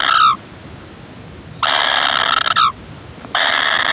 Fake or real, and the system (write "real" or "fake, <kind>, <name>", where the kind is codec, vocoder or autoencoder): real